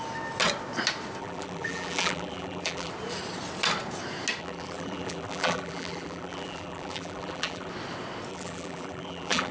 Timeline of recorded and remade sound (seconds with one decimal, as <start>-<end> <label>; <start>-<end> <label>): 0.0-1.2 recorded; 1.2-2.9 remade; 2.9-4.4 recorded; 4.4-7.7 remade; 7.7-8.3 recorded; 8.3-9.5 remade

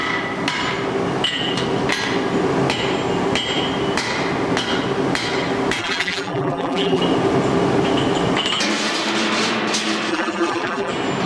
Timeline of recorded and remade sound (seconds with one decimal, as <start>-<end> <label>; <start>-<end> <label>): 0.0-5.8 recorded; 5.8-7.0 remade; 7.0-10.1 recorded; 10.1-10.9 remade; 10.9-11.3 recorded

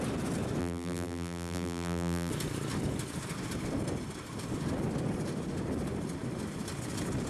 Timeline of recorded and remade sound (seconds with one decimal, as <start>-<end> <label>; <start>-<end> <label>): 0.0-0.6 recorded; 0.6-2.3 remade; 2.3-7.3 recorded